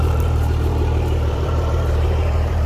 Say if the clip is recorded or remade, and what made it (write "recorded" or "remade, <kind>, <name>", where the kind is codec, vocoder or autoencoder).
remade, vocoder, BigVGAN v2